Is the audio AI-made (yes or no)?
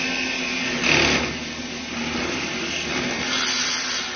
no